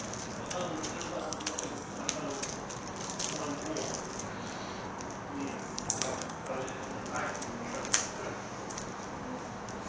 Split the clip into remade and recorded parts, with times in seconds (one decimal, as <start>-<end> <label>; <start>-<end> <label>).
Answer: 0.0-1.2 recorded; 1.2-2.0 remade; 2.0-5.6 recorded; 5.6-6.5 remade; 6.5-9.9 recorded